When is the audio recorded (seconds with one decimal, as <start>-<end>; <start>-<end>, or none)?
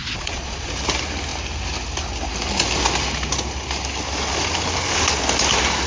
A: 0.7-5.9